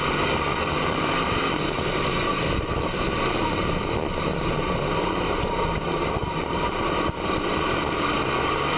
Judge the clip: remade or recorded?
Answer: remade